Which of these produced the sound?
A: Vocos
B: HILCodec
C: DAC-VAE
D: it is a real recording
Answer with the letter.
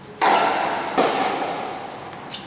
D